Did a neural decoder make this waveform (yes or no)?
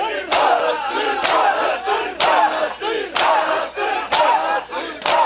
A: no